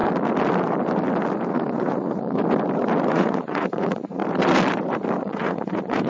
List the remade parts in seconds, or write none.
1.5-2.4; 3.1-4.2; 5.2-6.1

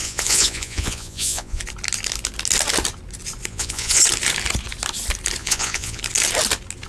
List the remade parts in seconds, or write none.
0.0-1.6; 3.5-4.0; 5.4-6.0

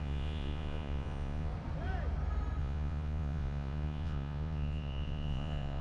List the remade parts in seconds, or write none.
0.0-1.5; 2.6-5.8

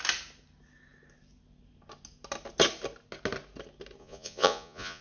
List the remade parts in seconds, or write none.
4.0-5.0

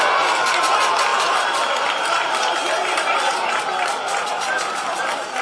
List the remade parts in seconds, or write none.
none

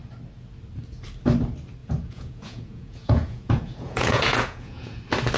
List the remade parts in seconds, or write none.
1.8-5.0

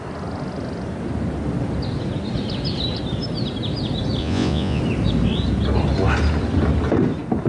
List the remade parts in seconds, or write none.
4.2-4.8